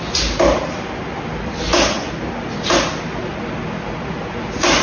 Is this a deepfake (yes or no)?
no